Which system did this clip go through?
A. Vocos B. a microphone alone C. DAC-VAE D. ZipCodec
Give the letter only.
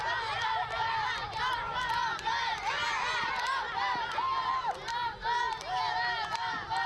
B